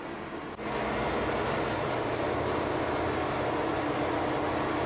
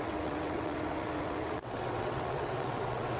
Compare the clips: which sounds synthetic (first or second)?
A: second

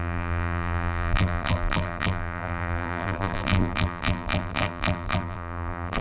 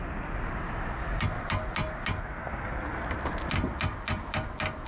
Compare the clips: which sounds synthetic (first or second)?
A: first